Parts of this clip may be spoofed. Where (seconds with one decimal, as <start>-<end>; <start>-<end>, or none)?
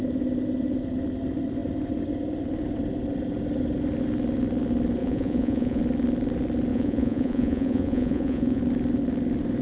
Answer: 5.0-5.8; 6.7-8.6